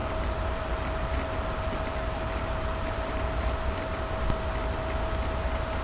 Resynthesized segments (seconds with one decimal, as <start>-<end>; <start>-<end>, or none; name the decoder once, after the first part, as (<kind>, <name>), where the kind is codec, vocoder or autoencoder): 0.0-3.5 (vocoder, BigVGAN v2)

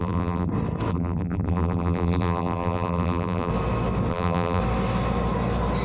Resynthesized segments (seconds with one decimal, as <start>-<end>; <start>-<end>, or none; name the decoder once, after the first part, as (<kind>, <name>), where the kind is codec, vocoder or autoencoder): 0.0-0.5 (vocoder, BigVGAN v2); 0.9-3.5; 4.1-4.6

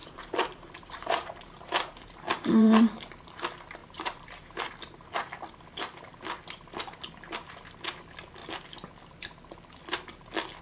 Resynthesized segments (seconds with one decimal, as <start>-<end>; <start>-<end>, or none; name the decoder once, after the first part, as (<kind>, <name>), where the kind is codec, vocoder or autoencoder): 0.0-3.1 (vocoder, BigVGAN v2); 3.8-4.7

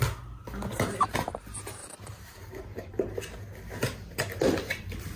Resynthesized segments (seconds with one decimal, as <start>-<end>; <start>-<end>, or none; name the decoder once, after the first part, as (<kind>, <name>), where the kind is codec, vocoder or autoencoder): 1.8-3.2 (vocoder, BigVGAN v2)

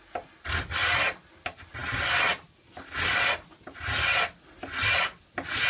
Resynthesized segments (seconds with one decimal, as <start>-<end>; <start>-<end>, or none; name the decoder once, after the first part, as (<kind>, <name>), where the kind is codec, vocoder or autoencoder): none

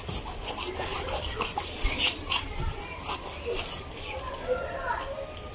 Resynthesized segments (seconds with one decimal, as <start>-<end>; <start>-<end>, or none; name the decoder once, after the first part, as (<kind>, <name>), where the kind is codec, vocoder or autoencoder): 0.9-3.1 (vocoder, BigVGAN v2)

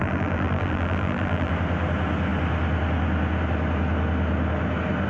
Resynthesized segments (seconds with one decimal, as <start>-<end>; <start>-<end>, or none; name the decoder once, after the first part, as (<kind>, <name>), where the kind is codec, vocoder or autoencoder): 0.0-1.5 (vocoder, BigVGAN v2)